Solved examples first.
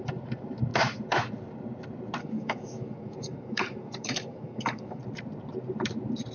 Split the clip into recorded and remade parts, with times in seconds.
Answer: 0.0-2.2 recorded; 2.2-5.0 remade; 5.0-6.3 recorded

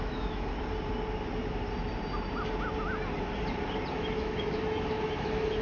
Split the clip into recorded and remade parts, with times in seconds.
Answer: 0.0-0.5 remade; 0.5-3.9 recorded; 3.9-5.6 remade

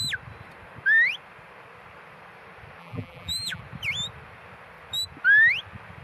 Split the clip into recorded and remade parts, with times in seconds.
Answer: 0.0-2.8 recorded; 2.8-3.6 remade; 3.6-6.0 recorded